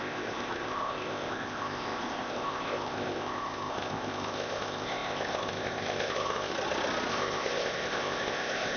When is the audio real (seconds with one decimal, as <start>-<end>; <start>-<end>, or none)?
6.5-7.1